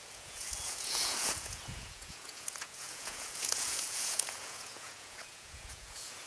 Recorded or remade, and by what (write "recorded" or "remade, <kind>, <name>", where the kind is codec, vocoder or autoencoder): remade, vocoder, Vocos